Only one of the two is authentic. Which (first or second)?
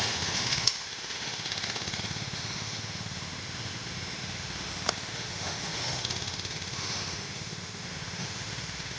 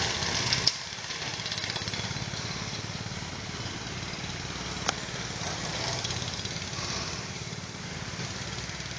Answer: second